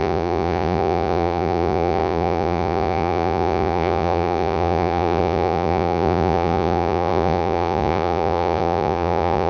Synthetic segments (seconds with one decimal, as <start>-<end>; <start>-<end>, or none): 0.0-9.5